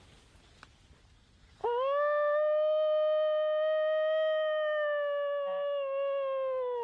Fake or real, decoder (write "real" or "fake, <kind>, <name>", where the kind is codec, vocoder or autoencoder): real